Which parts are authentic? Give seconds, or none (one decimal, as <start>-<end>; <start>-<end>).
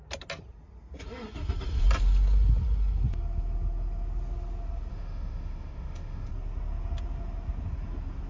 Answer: 0.0-4.9; 6.3-8.3